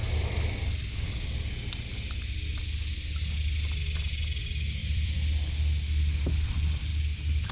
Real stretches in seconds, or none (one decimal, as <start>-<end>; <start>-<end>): 1.4-4.8; 5.5-7.5